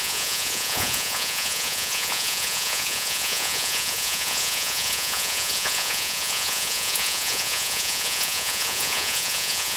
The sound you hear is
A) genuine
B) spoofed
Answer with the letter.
B